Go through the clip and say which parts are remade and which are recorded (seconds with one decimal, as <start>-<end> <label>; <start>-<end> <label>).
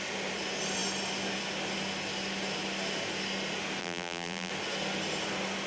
0.0-3.8 recorded; 3.8-4.5 remade; 4.5-5.7 recorded